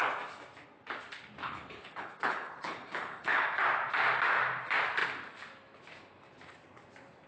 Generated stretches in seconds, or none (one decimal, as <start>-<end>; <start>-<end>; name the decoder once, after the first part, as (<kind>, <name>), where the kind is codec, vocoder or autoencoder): 1.4-3.6 (codec, HILCodec)